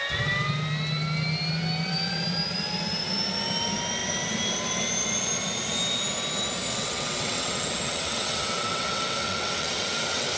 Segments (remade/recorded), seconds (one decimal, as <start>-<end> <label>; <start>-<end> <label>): 0.0-6.7 recorded; 6.7-10.4 remade